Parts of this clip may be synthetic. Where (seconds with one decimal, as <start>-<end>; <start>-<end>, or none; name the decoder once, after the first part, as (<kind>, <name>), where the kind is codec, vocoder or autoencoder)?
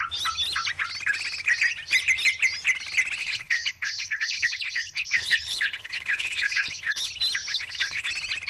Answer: 3.2-7.1 (codec, HILCodec); 7.5-8.1